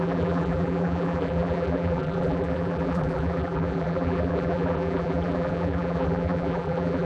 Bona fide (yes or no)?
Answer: no